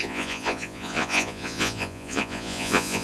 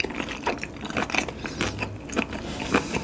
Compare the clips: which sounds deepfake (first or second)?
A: first